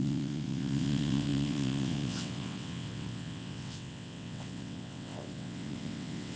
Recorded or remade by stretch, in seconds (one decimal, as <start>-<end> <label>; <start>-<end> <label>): 0.0-6.4 remade